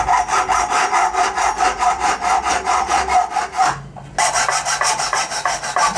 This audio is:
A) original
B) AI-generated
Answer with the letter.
A